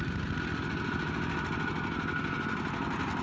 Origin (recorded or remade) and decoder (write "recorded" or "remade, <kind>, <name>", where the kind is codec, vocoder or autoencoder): recorded